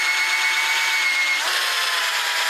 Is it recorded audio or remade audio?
recorded